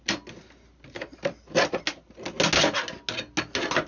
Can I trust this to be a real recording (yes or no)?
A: yes